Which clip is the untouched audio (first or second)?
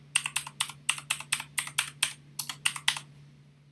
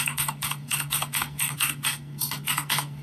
first